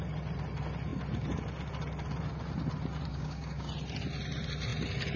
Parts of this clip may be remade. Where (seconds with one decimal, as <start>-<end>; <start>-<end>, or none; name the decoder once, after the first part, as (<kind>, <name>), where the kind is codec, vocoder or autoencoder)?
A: 3.1-3.7 (codec, DAC)